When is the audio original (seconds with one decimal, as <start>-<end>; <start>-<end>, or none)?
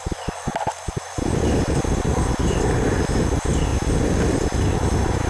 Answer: 0.0-5.3